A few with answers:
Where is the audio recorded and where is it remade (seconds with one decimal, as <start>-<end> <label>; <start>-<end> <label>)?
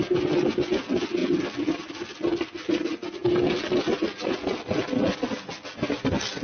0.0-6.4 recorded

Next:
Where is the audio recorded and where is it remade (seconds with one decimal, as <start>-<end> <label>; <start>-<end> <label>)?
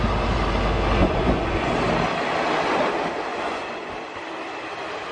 0.0-1.0 recorded; 1.0-1.7 remade; 1.7-3.3 recorded; 3.3-3.9 remade; 3.9-5.1 recorded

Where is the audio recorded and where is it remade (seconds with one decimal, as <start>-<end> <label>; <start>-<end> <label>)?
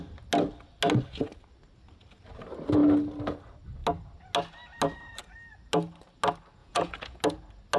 0.0-6.6 recorded; 6.6-7.2 remade; 7.2-7.8 recorded